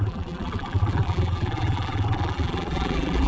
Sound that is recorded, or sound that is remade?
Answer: remade